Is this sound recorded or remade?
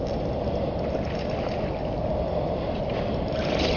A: recorded